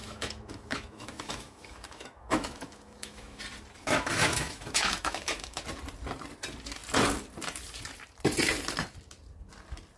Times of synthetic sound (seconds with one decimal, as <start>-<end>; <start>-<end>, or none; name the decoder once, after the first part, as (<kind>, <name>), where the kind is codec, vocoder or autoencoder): 0.0-3.4 (autoencoder, DAC-VAE); 3.8-5.6